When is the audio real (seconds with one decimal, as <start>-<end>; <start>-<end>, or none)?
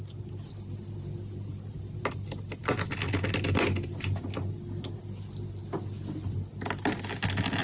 0.0-7.6